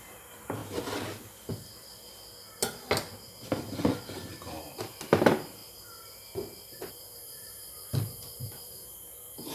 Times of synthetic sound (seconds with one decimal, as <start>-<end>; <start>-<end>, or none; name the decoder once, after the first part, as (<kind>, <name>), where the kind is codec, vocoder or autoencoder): 0.0-0.6 (vocoder, BigVGAN v2); 4.6-5.6; 6.9-9.5